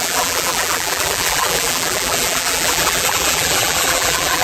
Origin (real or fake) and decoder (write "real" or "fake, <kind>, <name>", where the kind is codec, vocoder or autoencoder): fake, vocoder, BigVGAN v2